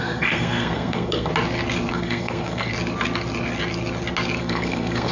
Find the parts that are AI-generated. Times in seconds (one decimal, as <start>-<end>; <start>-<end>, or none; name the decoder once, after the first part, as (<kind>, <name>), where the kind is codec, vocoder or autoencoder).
0.0-1.3 (codec, SNAC); 1.9-2.7; 4.4-5.1